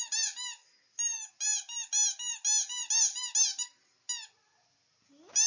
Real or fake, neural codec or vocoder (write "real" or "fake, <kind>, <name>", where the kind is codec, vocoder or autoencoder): real